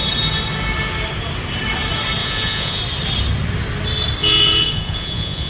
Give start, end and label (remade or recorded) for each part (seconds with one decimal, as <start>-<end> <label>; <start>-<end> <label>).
0.0-2.2 recorded; 2.2-2.8 remade; 2.8-4.2 recorded; 4.2-5.5 remade